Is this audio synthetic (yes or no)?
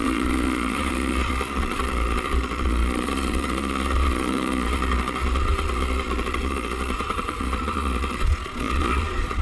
yes